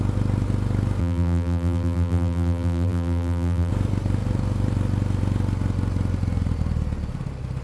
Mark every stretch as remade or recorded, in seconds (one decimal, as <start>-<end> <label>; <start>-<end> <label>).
0.0-1.0 recorded; 1.0-3.7 remade; 3.7-7.6 recorded